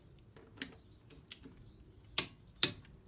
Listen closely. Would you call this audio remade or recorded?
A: recorded